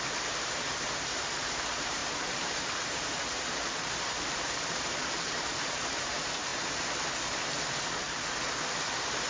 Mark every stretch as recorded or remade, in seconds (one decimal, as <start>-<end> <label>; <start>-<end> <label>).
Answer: 0.0-6.5 remade; 6.5-8.9 recorded; 8.9-9.3 remade